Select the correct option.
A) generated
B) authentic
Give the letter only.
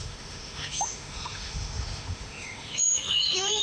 A